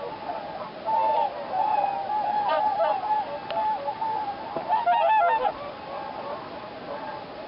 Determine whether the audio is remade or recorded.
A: recorded